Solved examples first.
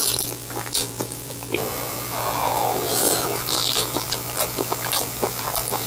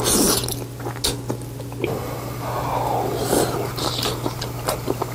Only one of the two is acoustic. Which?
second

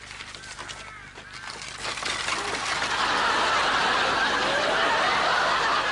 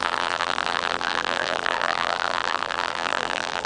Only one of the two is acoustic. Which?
first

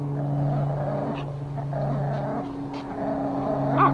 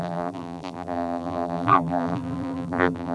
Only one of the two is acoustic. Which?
first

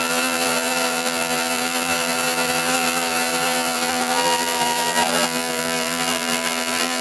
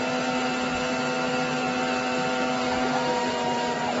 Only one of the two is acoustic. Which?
second